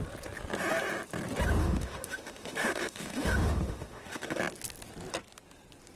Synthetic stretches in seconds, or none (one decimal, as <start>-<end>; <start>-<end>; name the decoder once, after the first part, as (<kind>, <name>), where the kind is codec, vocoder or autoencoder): 1.6-4.4 (autoencoder, DAC-VAE)